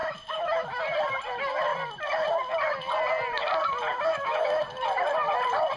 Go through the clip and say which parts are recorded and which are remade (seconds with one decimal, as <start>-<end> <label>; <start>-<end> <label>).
0.0-0.8 remade; 0.8-4.1 recorded; 4.1-4.6 remade; 4.6-5.8 recorded